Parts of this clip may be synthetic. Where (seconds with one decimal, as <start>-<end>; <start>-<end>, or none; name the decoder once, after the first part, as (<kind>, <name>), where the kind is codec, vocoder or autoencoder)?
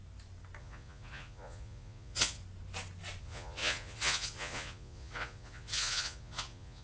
0.6-2.4 (vocoder, Vocos); 3.2-6.8